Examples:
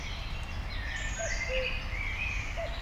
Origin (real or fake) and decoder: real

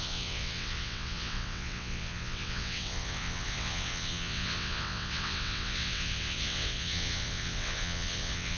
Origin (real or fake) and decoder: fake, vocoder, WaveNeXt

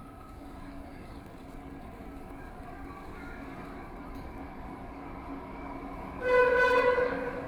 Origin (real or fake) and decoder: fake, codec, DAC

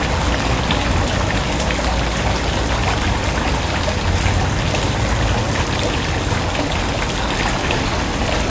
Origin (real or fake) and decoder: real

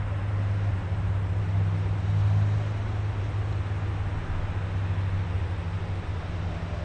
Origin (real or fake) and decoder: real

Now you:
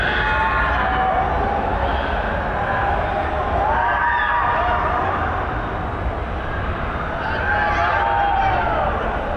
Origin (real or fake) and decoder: real